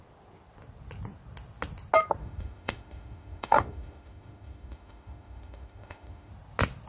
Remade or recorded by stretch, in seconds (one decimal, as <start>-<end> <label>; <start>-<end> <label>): 0.0-2.2 recorded; 2.2-6.3 remade; 6.3-6.9 recorded